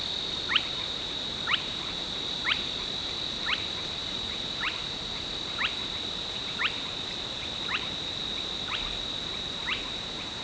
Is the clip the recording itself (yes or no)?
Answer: no